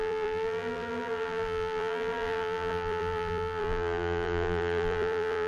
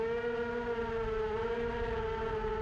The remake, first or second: first